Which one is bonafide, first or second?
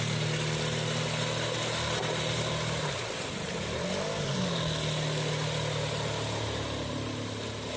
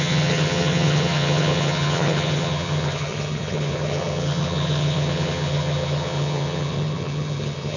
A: first